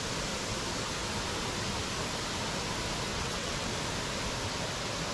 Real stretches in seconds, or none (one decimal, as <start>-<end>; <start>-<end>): 0.0-3.1; 3.7-5.1